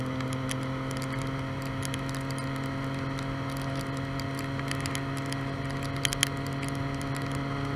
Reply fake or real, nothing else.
real